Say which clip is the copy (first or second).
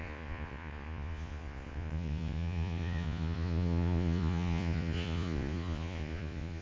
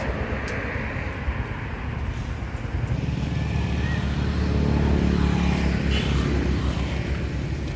first